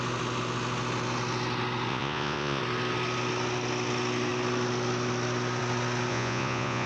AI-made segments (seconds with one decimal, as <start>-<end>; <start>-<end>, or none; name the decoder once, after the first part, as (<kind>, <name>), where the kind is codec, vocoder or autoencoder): 1.9-2.6 (vocoder, Vocos); 6.1-6.9